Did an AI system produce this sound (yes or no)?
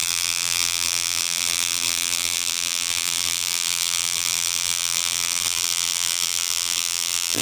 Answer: yes